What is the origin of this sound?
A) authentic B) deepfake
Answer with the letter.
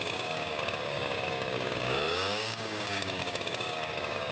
B